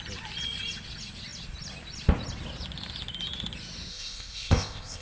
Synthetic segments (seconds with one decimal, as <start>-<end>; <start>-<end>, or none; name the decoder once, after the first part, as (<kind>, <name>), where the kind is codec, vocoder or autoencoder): 3.9-5.0 (codec, ZipCodec)